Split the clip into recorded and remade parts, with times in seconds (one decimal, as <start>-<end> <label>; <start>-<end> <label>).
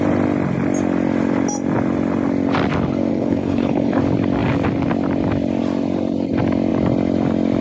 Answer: 0.0-3.1 recorded; 3.1-4.0 remade; 4.0-7.6 recorded